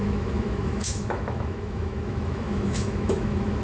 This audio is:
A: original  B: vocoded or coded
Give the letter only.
B